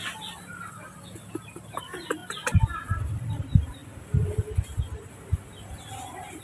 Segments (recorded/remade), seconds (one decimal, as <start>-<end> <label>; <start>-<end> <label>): 0.0-6.4 recorded